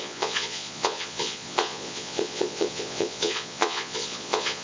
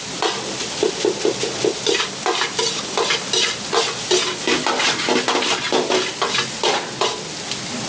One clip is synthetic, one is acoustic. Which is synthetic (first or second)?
first